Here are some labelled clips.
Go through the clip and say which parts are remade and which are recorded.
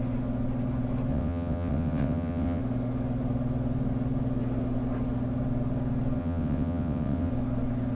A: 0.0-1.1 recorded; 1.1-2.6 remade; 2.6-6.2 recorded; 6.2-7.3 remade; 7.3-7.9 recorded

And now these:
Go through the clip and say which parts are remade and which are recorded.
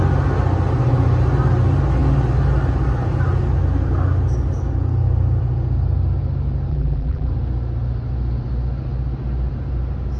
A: 0.0-6.7 recorded; 6.7-7.3 remade; 7.3-10.2 recorded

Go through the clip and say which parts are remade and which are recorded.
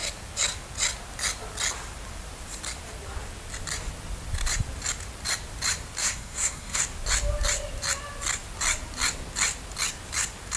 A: 0.0-6.0 recorded; 6.0-6.8 remade; 6.8-10.6 recorded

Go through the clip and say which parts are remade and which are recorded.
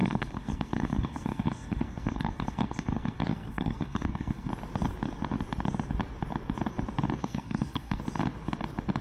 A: 0.0-4.5 remade; 4.5-7.2 recorded; 7.2-8.0 remade; 8.0-9.0 recorded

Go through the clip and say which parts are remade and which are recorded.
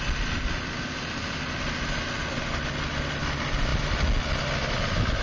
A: 0.0-5.2 recorded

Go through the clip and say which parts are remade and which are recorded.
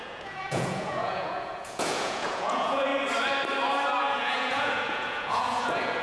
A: 0.0-2.9 remade; 2.9-4.0 recorded; 4.0-6.0 remade